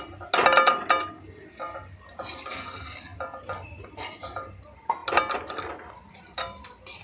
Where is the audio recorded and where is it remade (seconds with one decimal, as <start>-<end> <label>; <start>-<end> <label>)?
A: 0.0-7.0 recorded